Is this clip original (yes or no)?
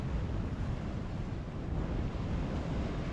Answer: yes